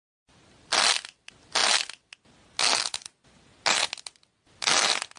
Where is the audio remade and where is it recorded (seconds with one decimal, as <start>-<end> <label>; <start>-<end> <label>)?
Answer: 0.0-5.2 recorded